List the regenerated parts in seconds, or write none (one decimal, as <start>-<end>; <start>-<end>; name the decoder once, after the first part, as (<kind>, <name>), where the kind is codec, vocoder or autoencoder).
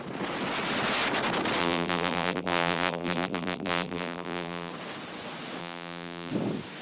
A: 1.6-4.7 (vocoder, BigVGAN v2); 5.6-6.3